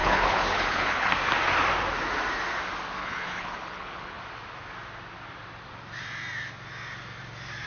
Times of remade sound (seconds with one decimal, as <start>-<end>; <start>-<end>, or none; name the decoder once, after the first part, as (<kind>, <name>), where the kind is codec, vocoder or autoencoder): 0.0-1.1 (codec, HILCodec); 3.0-4.2

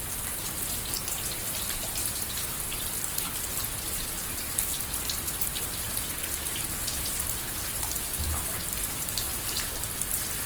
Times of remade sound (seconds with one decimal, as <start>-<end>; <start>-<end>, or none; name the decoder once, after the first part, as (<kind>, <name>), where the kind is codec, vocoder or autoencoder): 2.0-3.6 (vocoder, BigVGAN v2); 9.3-9.8

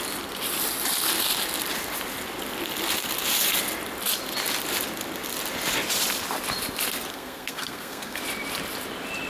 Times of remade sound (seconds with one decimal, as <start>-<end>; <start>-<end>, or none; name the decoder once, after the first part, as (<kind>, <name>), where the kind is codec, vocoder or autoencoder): 7.1-8.2 (codec, SNAC)

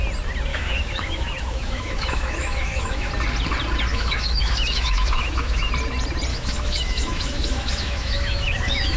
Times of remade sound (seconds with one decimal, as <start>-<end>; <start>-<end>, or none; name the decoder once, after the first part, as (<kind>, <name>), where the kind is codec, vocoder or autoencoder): 0.5-3.1 (autoencoder, DAC-VAE); 3.9-5.7; 6.3-9.0

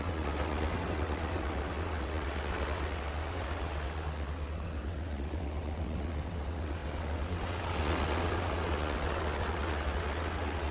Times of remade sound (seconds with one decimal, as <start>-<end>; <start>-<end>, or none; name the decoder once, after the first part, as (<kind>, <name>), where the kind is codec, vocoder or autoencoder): 0.0-10.7 (vocoder, WaveNeXt)